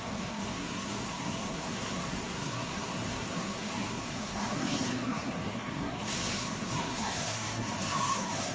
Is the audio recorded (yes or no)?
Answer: no